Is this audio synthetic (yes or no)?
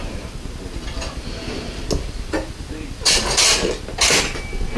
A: no